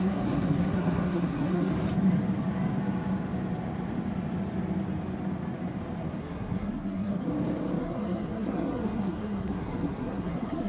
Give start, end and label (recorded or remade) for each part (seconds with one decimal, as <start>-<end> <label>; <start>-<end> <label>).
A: 0.0-1.7 remade; 1.7-6.2 recorded; 6.2-7.3 remade; 7.3-7.8 recorded; 7.8-10.7 remade